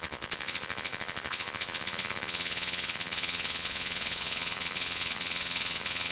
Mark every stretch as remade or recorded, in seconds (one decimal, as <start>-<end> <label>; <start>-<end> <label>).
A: 0.0-6.1 remade